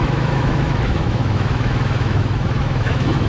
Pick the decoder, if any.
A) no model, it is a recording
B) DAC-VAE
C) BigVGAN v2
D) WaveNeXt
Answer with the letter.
B